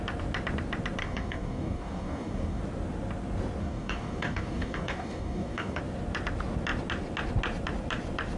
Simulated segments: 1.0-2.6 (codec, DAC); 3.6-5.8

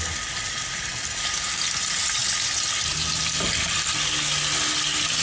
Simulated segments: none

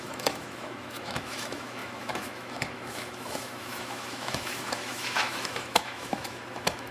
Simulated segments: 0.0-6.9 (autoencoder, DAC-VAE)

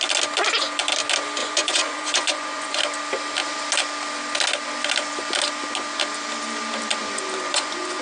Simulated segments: 1.4-2.8 (vocoder, Vocos); 7.0-8.0

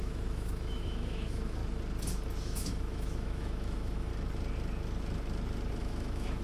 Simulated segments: 0.0-1.6 (autoencoder, DAC-VAE); 2.4-4.1; 5.8-6.4